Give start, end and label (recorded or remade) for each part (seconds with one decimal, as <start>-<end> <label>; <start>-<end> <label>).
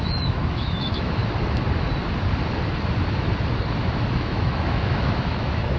0.0-1.2 remade; 1.2-4.1 recorded; 4.1-5.8 remade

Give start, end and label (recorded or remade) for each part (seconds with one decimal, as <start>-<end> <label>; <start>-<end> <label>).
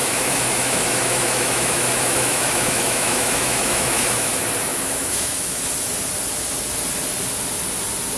0.0-4.3 remade; 4.3-4.7 recorded; 4.7-5.6 remade; 5.6-8.2 recorded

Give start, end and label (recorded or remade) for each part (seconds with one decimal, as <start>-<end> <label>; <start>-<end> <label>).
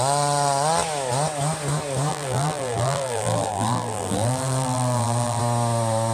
0.0-2.1 recorded; 2.1-5.4 remade; 5.4-6.1 recorded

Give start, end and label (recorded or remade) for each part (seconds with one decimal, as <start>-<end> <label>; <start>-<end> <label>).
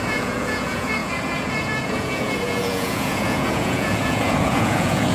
0.0-5.1 remade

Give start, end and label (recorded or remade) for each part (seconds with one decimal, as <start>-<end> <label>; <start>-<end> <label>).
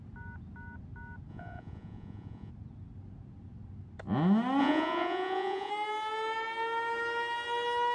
0.0-1.3 recorded; 1.3-2.5 remade; 2.5-4.6 recorded; 4.6-5.7 remade; 5.7-7.9 recorded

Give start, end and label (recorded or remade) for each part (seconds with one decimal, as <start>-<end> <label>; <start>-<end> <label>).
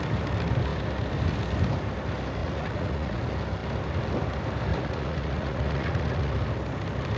0.0-2.4 recorded; 2.4-3.2 remade; 3.2-4.7 recorded; 4.7-6.3 remade; 6.3-7.2 recorded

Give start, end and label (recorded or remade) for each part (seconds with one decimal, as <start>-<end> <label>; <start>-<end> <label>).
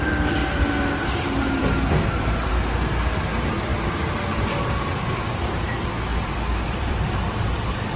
0.0-0.4 recorded; 0.4-2.5 remade; 2.5-6.1 recorded; 6.1-7.6 remade; 7.6-8.0 recorded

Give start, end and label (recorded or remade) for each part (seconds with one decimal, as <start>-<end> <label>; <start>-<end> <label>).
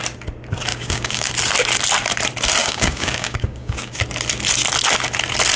0.0-0.7 recorded; 0.7-1.3 remade; 1.3-2.6 recorded; 2.6-4.0 remade; 4.0-5.6 recorded